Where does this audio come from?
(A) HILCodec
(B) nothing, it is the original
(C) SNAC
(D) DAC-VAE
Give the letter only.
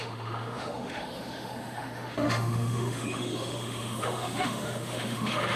D